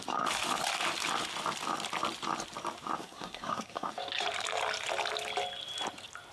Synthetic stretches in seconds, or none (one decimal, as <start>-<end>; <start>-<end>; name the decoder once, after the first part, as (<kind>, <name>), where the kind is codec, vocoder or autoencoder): 3.0-3.9 (codec, SNAC)